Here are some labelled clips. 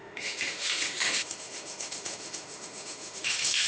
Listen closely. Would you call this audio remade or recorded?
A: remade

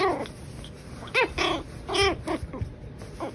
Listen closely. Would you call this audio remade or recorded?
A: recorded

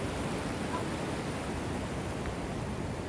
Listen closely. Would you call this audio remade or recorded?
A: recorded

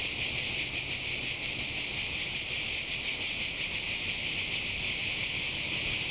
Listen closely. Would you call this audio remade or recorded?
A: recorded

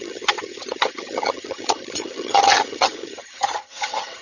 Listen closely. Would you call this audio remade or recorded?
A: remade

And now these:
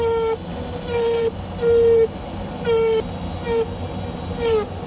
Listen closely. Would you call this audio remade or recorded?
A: recorded